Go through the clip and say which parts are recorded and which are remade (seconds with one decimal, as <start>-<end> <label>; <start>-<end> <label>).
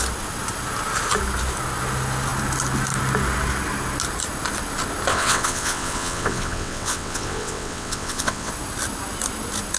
0.0-5.1 recorded; 5.1-8.5 remade; 8.5-9.8 recorded